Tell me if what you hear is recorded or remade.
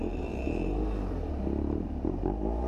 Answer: remade